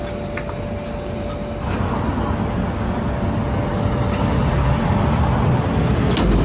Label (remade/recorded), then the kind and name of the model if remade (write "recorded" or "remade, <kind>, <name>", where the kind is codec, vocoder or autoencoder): recorded